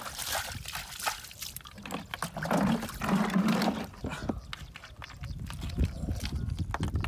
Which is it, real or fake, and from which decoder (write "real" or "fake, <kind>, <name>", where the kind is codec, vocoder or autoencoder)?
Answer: real